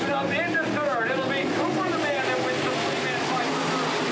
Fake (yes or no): no